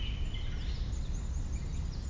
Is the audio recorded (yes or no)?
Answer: yes